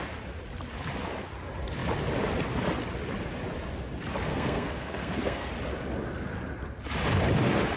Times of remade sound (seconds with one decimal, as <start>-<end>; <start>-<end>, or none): 4.3-5.5